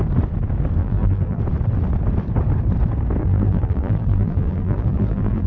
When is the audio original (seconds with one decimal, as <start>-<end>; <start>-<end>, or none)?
0.0-0.8; 1.4-3.2